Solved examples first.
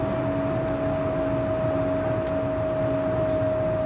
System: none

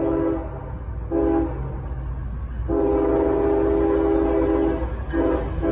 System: none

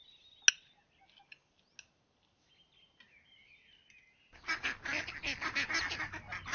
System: none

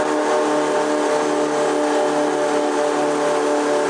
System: none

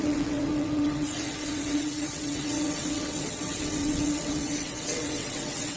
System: vocoder, WaveNeXt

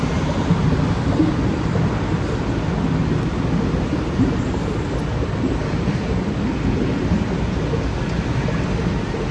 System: none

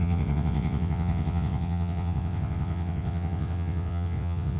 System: vocoder, WaveNeXt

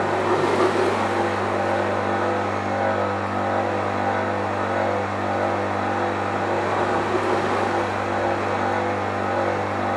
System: none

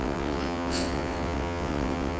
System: vocoder, WaveNeXt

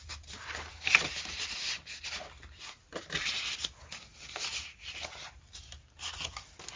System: none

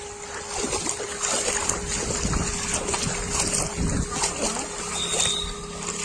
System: none